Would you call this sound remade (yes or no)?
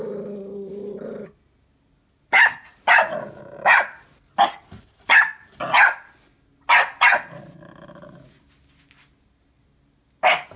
no